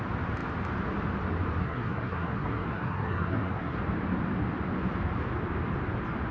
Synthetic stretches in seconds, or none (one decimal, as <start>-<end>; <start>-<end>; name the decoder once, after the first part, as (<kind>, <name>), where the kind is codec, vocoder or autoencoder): 1.6-3.8 (codec, SNAC)